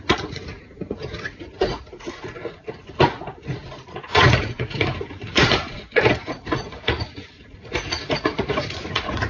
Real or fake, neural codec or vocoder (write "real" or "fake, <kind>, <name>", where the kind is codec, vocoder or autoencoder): fake, vocoder, Vocos